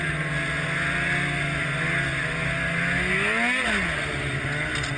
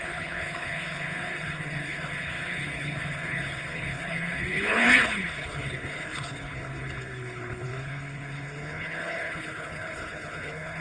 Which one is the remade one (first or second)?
second